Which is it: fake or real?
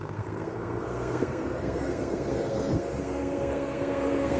fake